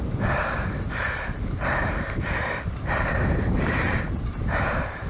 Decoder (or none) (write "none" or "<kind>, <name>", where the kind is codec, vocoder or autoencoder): vocoder, BigVGAN v2